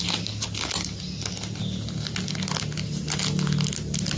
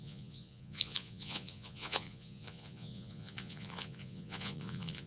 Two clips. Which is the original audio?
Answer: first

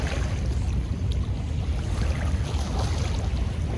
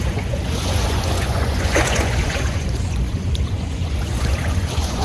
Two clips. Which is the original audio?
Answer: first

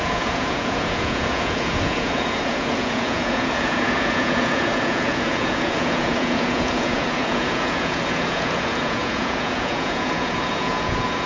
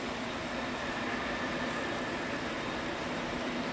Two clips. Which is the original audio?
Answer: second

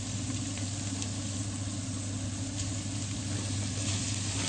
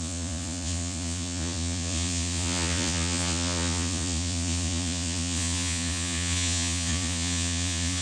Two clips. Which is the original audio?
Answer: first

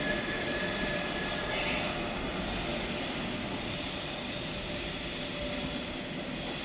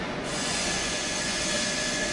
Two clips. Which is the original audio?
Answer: first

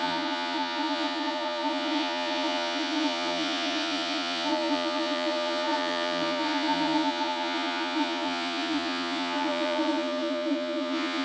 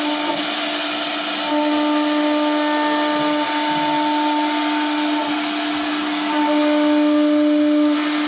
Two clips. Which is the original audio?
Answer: second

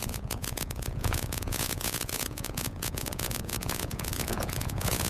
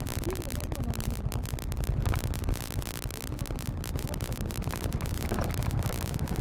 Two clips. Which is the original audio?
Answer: second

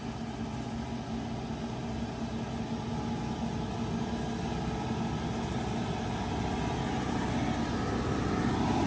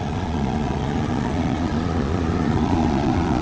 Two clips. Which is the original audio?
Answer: first